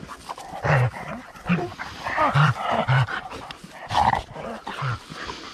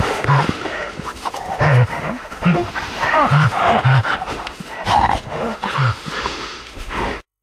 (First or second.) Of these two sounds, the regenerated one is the second